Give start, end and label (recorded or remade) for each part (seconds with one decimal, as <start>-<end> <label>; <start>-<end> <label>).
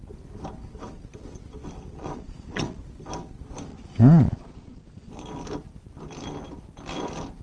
0.0-2.0 recorded; 2.0-2.8 remade; 2.8-3.7 recorded; 3.7-5.1 remade; 5.1-7.4 recorded